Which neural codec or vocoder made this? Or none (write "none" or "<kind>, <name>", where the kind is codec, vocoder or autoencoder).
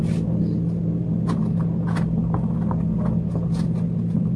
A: none